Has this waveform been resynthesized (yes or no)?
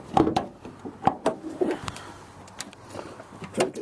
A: yes